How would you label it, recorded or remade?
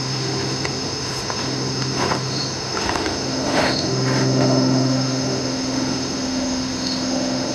remade